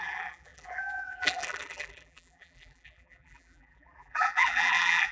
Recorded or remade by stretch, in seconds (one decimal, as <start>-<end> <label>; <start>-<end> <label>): 0.0-5.1 remade